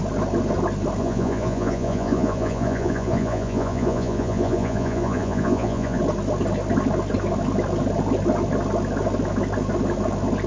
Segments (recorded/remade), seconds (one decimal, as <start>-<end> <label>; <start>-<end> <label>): 0.0-1.0 recorded; 1.0-6.0 remade; 6.0-10.5 recorded